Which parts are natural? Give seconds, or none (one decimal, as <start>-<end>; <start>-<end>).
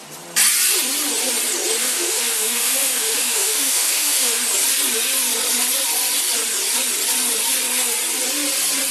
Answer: 0.0-1.8; 4.4-8.9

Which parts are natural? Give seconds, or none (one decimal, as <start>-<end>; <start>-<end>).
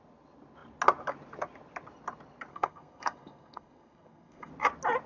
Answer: 0.0-2.5; 4.5-5.1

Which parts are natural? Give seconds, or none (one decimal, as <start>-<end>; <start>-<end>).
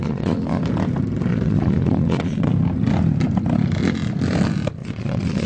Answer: 0.6-1.3; 2.5-4.8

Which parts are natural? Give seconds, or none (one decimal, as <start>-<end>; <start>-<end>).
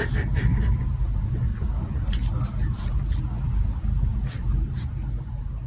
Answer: 0.0-5.7